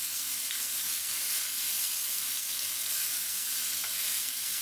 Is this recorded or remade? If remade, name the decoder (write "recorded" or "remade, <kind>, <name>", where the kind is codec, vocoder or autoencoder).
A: remade, codec, SNAC